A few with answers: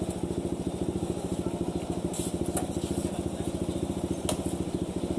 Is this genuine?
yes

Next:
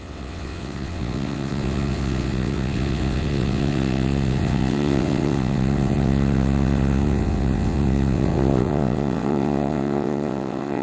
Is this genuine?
no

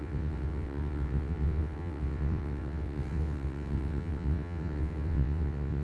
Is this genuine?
no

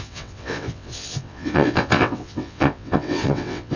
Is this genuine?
no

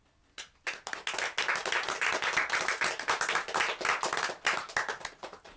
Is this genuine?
yes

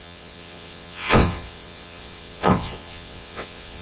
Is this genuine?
no